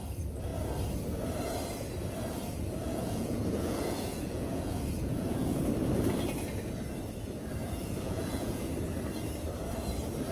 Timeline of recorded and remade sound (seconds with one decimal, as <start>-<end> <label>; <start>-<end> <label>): 0.0-2.8 recorded; 2.8-5.6 remade; 5.6-7.6 recorded; 7.6-8.7 remade; 8.7-10.3 recorded